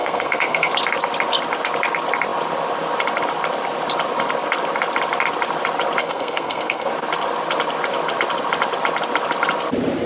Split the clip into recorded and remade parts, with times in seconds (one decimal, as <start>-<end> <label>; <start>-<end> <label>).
0.0-0.7 remade; 0.7-6.0 recorded; 6.0-6.9 remade; 6.9-10.1 recorded